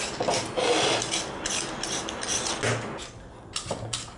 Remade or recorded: recorded